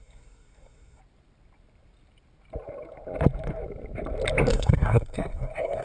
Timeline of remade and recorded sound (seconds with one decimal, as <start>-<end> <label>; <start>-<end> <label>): 0.0-1.0 remade; 1.0-4.5 recorded; 4.5-5.8 remade